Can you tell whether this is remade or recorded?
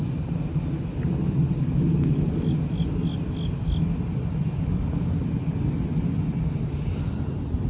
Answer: recorded